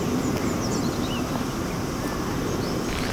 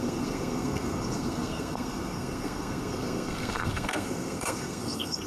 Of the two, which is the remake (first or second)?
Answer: second